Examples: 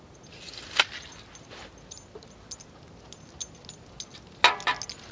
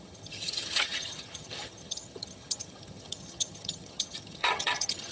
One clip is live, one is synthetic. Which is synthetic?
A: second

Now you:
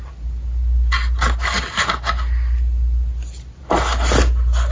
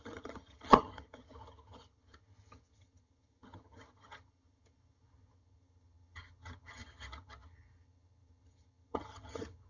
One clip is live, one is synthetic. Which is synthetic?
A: second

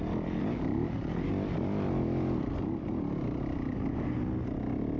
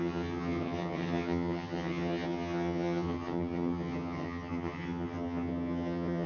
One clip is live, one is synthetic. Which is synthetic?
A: second